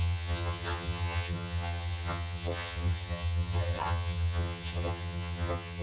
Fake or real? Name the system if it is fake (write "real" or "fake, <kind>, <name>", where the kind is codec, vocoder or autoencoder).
fake, vocoder, HiFi-GAN